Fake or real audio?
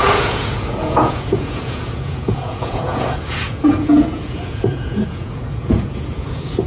fake